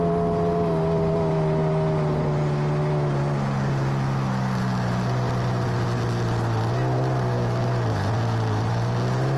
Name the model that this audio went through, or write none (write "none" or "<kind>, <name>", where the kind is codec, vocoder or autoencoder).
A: none